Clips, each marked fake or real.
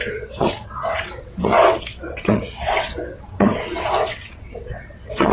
fake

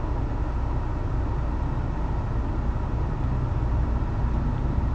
real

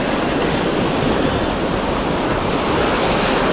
real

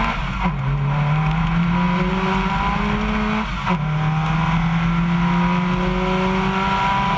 real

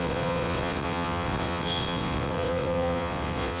fake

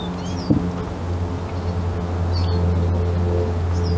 real